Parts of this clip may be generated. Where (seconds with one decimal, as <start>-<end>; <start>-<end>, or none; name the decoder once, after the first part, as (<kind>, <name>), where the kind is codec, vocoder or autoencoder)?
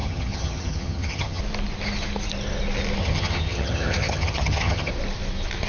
0.0-1.4 (vocoder, HiFi-GAN); 3.0-4.9